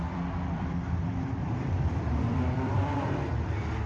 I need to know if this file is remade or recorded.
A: remade